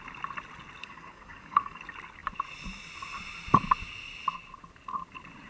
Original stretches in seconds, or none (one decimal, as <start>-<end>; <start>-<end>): 0.0-0.8; 1.8-5.5